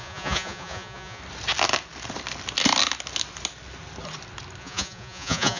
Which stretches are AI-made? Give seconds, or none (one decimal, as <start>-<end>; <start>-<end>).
0.0-1.2; 4.6-5.6